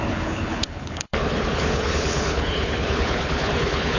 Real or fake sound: fake